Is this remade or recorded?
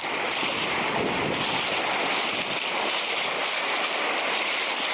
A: remade